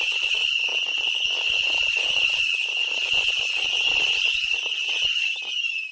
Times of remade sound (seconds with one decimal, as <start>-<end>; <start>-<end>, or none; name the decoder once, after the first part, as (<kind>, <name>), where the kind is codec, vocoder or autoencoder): 2.8-5.9 (vocoder, BigVGAN v2)